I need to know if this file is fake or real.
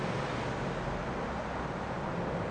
real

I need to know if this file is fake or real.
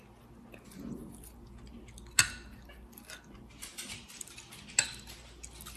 real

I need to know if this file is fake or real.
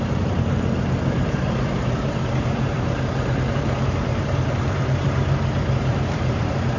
fake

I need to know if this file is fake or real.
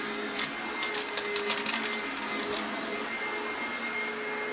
real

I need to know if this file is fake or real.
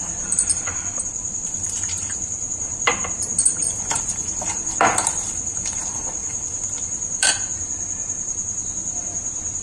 fake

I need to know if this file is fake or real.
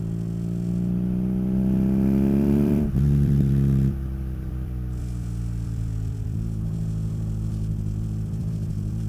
fake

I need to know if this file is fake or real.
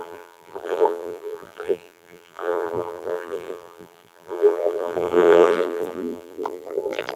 fake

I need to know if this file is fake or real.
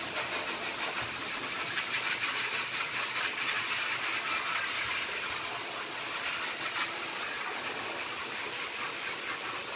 real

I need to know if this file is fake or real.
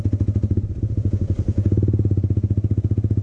real